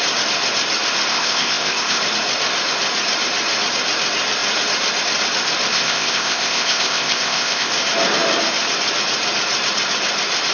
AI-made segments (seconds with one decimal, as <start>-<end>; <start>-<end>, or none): 1.1-2.0; 5.7-7.7